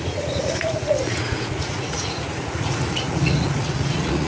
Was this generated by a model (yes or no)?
yes